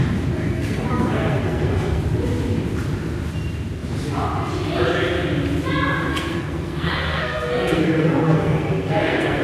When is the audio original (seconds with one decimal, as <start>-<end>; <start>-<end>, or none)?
0.0-0.4; 2.0-6.1